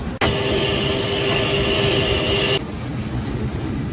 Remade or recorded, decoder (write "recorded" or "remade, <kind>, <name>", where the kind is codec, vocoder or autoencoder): recorded